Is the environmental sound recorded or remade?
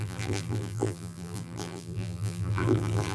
remade